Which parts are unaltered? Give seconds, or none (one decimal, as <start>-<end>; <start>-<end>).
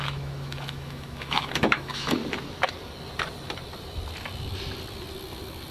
2.2-5.7